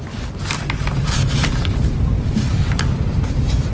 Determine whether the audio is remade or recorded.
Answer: recorded